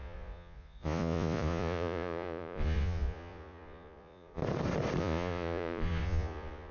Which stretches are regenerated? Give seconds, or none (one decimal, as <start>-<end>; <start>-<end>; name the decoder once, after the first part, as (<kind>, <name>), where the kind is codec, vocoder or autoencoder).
0.0-4.4 (vocoder, Vocos); 5.0-6.7